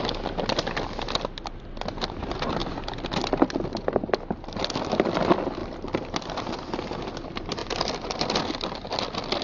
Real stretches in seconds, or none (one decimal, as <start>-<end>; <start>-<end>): 0.0-2.6; 3.1-5.6; 6.5-9.4